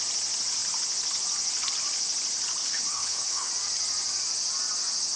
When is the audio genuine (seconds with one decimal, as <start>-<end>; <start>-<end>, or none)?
0.0-2.6; 3.5-5.2